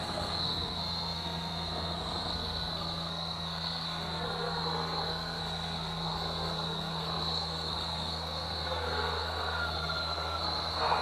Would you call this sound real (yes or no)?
no